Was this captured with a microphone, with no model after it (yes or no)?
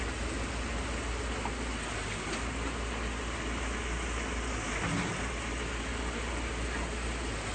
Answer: yes